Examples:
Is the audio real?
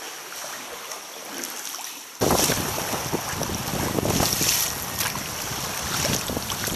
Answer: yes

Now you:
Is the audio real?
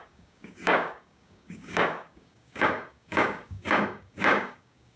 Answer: no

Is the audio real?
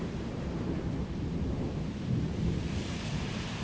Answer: no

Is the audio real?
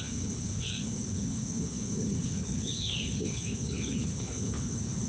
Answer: no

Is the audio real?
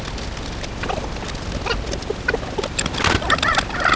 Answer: yes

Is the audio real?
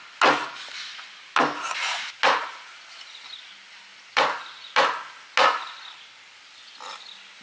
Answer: yes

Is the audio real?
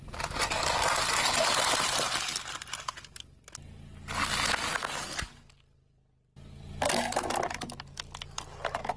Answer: yes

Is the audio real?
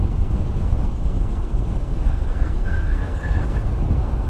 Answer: no